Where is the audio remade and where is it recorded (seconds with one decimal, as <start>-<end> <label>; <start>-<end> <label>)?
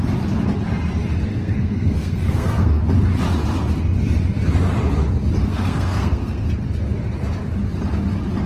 0.0-1.3 recorded; 1.3-2.8 remade; 2.8-5.4 recorded; 5.4-6.5 remade; 6.5-8.5 recorded